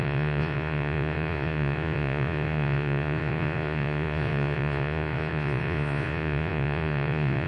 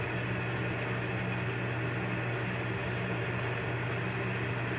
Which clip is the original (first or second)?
second